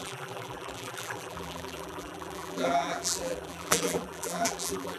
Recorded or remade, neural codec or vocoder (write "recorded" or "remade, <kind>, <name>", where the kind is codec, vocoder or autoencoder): remade, vocoder, BigVGAN v2